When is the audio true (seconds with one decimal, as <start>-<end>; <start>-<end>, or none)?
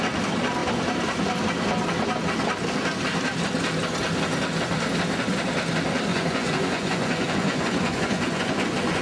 0.0-6.1